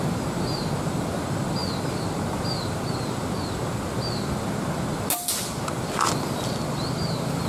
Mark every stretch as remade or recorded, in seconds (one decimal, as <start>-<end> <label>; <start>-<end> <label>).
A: 0.0-7.5 recorded